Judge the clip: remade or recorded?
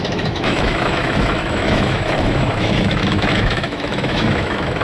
remade